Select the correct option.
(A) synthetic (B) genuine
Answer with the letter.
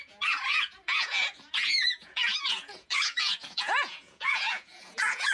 A